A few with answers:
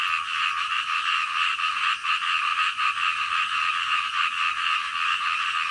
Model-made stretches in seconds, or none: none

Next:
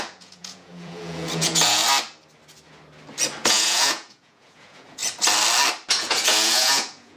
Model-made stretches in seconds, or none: 0.0-1.8 (vocoder, Vocos); 3.5-5.0; 5.9-7.2

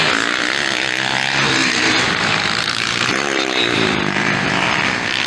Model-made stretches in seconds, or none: 1.6-4.5 (vocoder, BigVGAN v2)

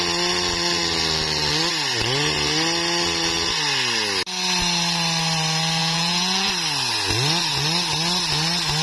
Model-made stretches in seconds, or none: 5.8-6.5 (vocoder, Vocos)

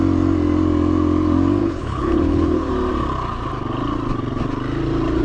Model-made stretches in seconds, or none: 1.6-2.7 (codec, HILCodec)

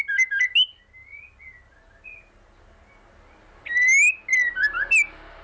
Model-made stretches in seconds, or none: none